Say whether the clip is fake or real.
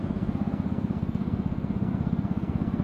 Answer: fake